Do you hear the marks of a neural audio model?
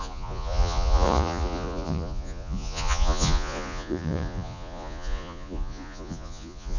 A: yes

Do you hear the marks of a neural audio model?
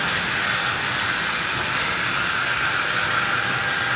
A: no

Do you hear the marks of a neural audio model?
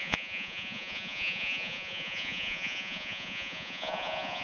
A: yes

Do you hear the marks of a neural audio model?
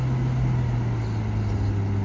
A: no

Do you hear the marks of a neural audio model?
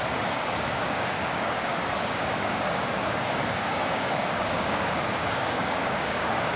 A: yes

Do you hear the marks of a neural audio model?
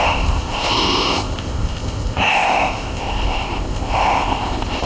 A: yes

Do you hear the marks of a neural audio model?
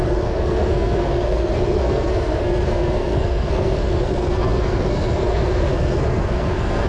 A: yes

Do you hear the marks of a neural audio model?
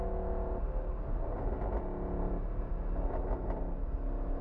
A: no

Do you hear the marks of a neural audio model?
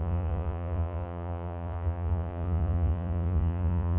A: yes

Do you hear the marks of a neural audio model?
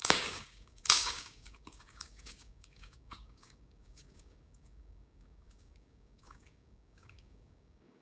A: yes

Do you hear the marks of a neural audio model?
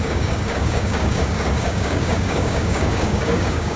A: yes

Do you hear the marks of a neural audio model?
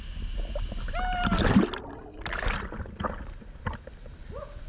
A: no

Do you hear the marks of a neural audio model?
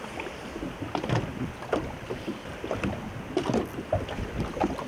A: no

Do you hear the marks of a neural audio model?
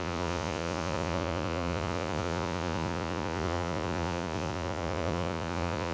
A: yes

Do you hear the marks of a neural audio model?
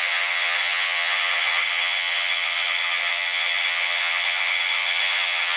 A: yes